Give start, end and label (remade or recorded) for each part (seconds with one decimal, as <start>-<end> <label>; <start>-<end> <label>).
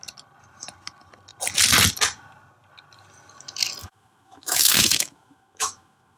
0.0-3.8 recorded; 3.8-6.2 remade